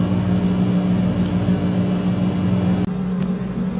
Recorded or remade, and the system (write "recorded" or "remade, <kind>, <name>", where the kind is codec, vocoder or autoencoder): recorded